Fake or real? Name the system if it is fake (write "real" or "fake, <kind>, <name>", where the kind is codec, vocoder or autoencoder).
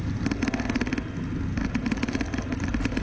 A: real